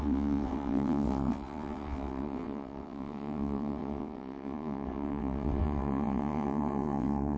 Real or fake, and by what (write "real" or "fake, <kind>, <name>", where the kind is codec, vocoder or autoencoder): fake, vocoder, WaveNeXt